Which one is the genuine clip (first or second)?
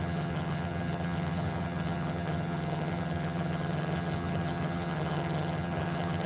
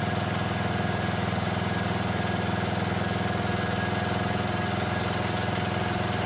second